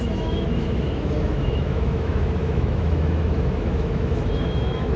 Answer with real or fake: fake